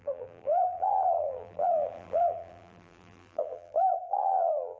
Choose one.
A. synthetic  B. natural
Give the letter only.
A